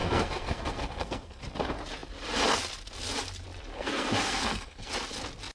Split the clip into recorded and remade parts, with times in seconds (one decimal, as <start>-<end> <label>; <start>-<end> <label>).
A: 0.0-1.4 remade; 1.4-3.7 recorded; 3.7-4.9 remade; 4.9-5.5 recorded